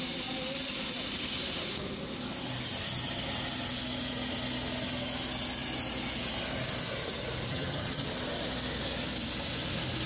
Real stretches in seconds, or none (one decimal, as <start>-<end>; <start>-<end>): 0.0-7.5; 8.1-10.1